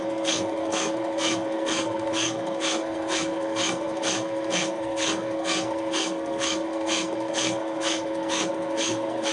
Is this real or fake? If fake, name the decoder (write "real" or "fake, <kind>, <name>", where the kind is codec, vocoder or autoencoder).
fake, codec, SNAC